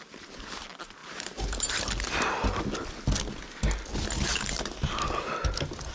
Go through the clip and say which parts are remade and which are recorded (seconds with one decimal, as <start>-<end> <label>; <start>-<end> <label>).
0.0-1.0 recorded; 1.0-1.7 remade; 1.7-4.3 recorded; 4.3-4.9 remade; 4.9-5.9 recorded

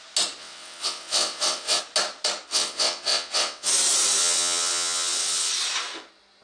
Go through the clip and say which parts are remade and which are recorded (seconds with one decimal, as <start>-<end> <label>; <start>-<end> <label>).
0.0-0.4 recorded; 0.4-1.8 remade; 1.8-2.5 recorded; 2.5-3.7 remade; 3.7-4.2 recorded; 4.2-5.5 remade; 5.5-6.4 recorded